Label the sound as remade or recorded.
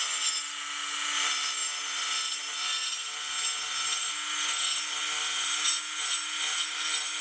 recorded